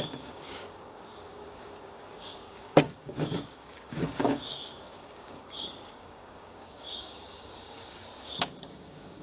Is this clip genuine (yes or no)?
no